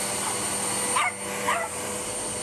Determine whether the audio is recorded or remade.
recorded